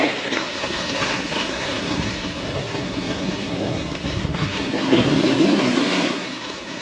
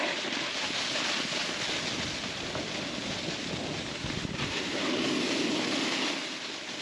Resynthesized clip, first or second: first